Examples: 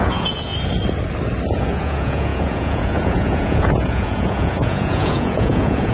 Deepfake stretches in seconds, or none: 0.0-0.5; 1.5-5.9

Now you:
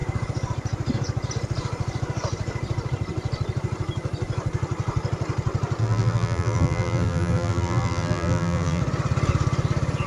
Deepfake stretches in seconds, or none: 5.8-8.8

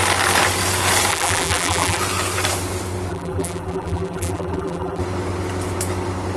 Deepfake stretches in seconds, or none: 1.1-2.0; 3.1-5.0

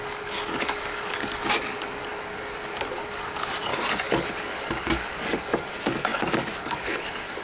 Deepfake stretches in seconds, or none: 0.0-3.7; 4.4-7.4

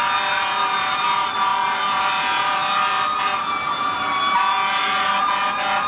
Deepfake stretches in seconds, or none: none